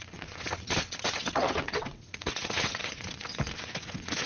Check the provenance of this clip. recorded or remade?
remade